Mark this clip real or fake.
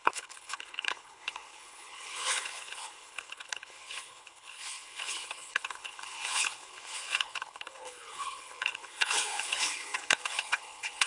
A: fake